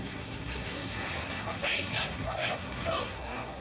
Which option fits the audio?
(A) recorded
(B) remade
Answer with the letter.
B